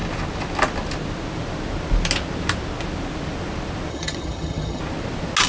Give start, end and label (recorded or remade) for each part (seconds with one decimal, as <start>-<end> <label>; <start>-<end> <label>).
0.0-3.9 recorded; 3.9-4.8 remade; 4.8-5.5 recorded